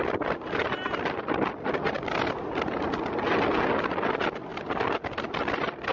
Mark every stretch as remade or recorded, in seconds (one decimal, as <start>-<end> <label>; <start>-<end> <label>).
0.0-4.5 recorded; 4.5-5.2 remade; 5.2-5.9 recorded